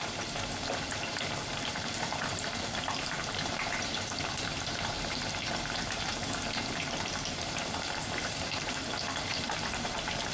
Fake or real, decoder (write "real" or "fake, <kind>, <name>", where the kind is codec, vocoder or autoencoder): fake, vocoder, BigVGAN v2